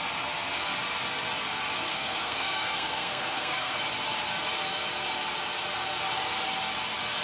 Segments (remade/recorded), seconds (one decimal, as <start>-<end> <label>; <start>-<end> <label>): 0.0-1.9 recorded; 1.9-3.7 remade; 3.7-7.2 recorded